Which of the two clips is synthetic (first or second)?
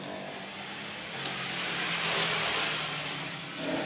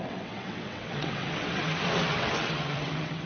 second